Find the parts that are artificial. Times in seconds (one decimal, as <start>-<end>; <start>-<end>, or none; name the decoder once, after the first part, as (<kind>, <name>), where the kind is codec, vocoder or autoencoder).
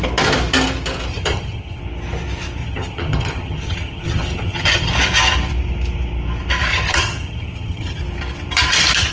1.1-1.8 (vocoder, HiFi-GAN); 2.6-4.9; 6.7-8.0